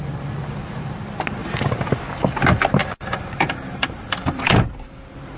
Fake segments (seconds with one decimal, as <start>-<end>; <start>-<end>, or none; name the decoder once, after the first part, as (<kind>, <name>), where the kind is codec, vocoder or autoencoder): 1.4-2.0 (vocoder, BigVGAN v2); 2.8-5.0